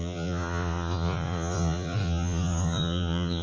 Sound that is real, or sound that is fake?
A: fake